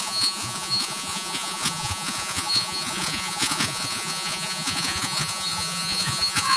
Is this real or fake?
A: fake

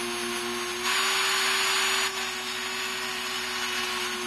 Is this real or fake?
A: real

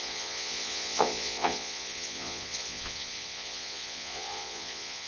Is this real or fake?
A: fake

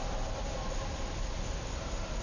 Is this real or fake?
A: real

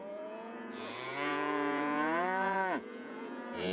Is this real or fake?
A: fake